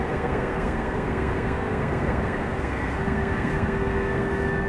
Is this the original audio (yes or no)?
no